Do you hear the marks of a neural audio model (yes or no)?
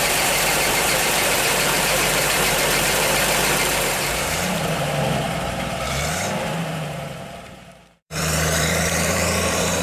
yes